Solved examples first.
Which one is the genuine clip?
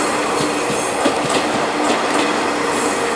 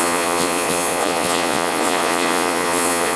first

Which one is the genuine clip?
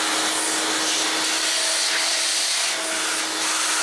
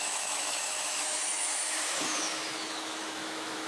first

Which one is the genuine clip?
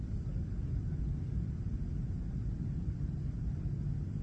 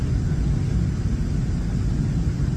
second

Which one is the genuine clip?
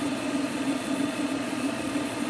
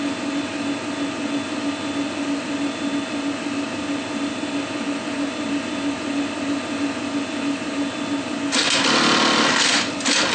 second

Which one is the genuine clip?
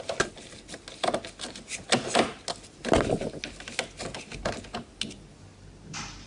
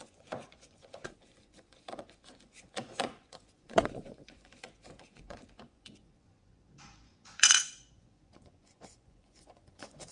first